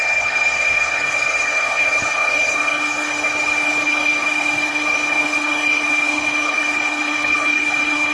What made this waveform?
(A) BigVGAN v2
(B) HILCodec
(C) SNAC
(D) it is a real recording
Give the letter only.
B